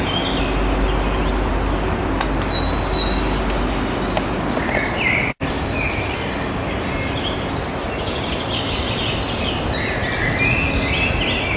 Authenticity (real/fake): real